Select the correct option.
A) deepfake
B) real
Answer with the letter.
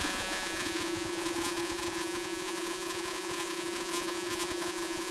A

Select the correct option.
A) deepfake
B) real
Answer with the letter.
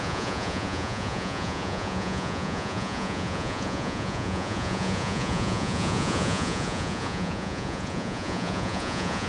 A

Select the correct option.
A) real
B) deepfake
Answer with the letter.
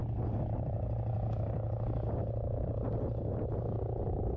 A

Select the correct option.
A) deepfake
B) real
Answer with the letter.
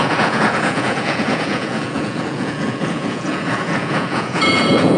A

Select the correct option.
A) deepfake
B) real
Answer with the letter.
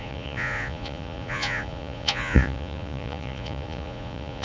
A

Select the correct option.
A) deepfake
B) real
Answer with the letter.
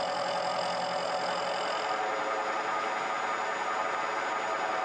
B